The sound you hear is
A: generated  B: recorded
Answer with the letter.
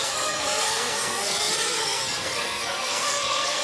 A